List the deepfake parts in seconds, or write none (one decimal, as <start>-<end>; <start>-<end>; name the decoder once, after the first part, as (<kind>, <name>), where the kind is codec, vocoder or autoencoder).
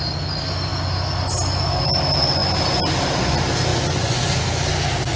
3.7-4.4 (vocoder, Vocos)